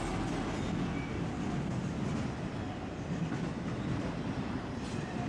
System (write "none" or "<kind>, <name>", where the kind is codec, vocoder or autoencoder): none